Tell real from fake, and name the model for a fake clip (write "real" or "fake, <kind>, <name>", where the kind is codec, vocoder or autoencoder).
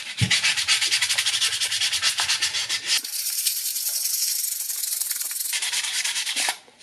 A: fake, vocoder, BigVGAN v2